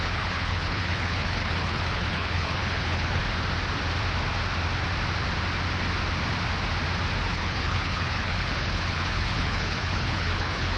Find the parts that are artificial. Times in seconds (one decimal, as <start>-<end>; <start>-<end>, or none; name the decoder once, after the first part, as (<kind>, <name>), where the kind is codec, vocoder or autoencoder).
0.0-3.2 (codec, HILCodec); 7.3-10.8